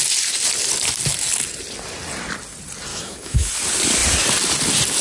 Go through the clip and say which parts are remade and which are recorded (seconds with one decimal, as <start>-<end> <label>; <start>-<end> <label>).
0.0-2.9 recorded; 2.9-3.5 remade; 3.5-5.0 recorded